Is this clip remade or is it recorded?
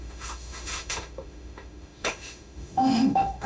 remade